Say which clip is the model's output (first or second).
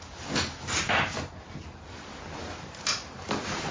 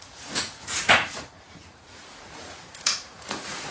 second